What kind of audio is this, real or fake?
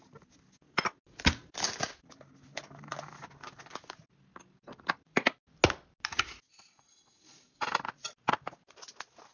real